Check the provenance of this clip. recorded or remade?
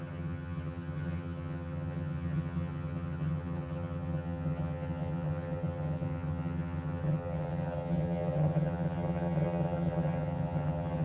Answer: remade